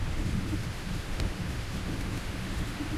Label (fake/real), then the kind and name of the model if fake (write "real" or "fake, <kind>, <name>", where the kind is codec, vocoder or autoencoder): fake, autoencoder, DAC-VAE